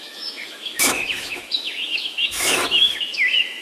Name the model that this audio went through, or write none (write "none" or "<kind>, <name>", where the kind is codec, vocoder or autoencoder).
autoencoder, DAC-VAE